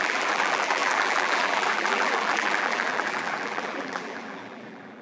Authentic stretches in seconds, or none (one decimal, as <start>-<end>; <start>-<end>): none

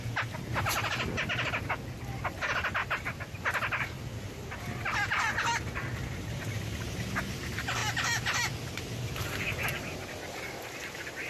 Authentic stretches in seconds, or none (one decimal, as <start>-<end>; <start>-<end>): 0.0-2.8; 4.1-11.3

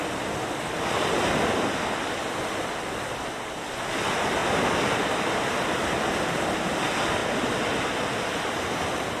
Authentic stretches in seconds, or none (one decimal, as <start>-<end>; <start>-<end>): 0.0-9.2

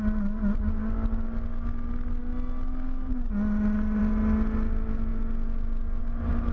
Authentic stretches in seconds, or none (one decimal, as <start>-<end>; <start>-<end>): 0.0-6.5

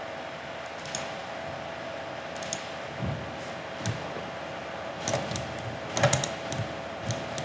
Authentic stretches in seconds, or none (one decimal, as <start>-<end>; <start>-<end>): 0.0-7.4

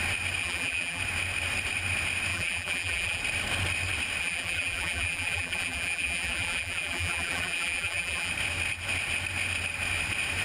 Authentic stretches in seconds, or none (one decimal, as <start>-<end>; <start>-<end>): 0.0-0.4; 1.0-2.3; 3.2-4.2; 8.3-10.4

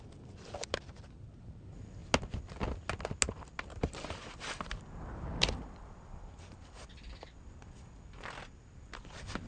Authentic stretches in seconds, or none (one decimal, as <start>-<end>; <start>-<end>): 2.0-5.3